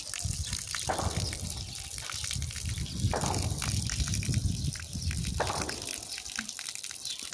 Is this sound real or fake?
real